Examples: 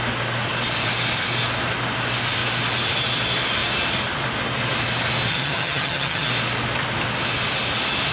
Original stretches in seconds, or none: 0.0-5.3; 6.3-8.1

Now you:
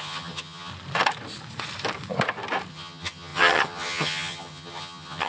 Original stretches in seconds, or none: 0.7-2.7

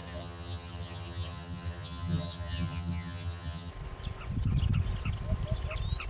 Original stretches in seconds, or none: 3.7-6.1

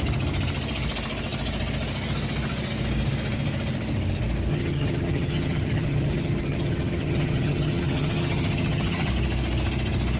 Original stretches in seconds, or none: 0.0-4.5; 9.1-10.2

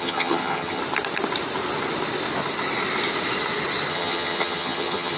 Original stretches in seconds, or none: 0.8-3.9

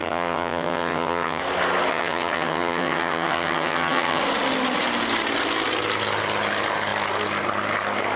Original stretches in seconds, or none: 1.4-1.9; 4.2-8.2